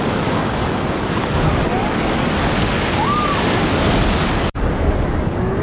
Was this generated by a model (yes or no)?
yes